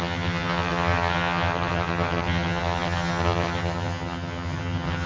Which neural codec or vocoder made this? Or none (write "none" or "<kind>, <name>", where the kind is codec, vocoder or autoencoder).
vocoder, HiFi-GAN